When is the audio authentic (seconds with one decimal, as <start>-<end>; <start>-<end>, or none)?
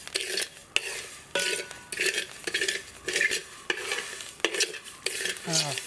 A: 0.0-5.9